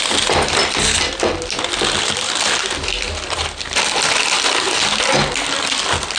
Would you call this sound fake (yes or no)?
no